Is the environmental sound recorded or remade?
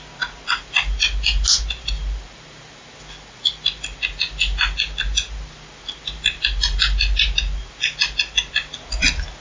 recorded